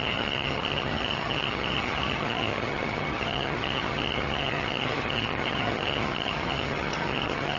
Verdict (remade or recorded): remade